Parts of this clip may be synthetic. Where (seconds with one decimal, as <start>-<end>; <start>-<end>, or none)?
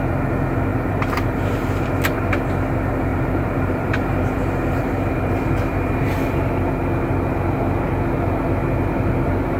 0.7-1.9; 3.1-6.5